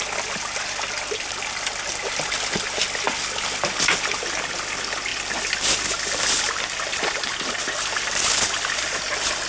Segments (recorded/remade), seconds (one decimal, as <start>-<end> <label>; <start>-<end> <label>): 0.0-9.5 recorded